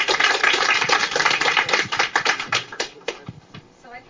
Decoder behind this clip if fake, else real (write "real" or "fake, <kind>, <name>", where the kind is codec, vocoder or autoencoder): fake, vocoder, BigVGAN v2